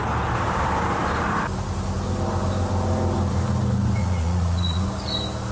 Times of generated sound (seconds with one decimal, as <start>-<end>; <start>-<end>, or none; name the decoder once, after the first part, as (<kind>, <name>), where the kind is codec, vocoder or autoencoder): 4.0-4.8 (vocoder, Vocos)